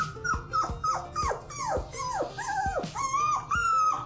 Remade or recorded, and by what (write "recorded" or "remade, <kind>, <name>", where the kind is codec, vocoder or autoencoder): recorded